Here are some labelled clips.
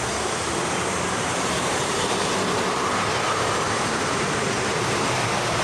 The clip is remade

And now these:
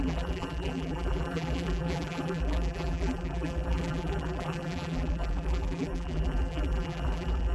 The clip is remade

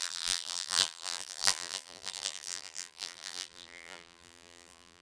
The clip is remade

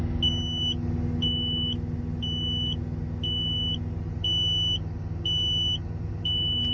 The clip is recorded